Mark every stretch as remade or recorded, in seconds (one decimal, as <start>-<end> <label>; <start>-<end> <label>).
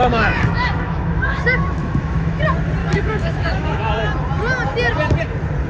0.0-2.4 remade; 2.4-2.8 recorded; 2.8-3.9 remade; 3.9-5.7 recorded